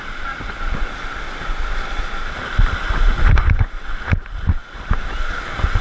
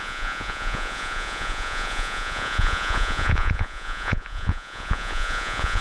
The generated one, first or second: second